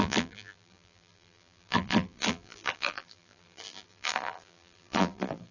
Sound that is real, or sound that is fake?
fake